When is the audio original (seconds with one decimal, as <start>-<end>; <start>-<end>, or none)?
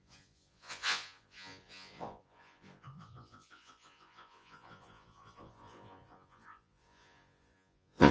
none